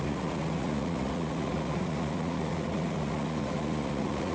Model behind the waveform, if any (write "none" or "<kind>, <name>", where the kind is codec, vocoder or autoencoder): vocoder, Vocos